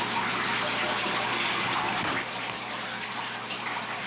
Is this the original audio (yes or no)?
yes